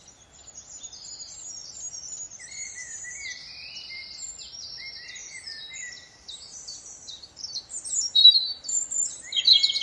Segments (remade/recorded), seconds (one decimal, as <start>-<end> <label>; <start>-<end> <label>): 0.0-5.2 recorded; 5.2-7.6 remade; 7.6-9.8 recorded